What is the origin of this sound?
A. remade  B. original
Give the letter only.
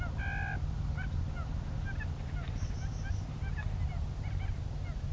B